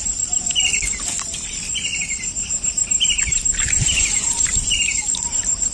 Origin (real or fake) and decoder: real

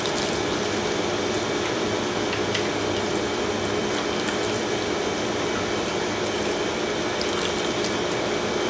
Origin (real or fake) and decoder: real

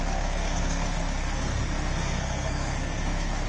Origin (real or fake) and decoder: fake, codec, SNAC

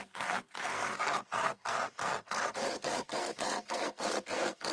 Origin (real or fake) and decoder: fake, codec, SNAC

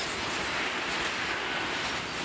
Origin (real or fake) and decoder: real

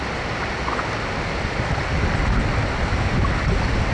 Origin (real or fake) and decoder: real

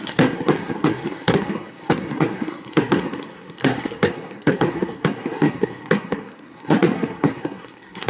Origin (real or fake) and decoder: fake, codec, SNAC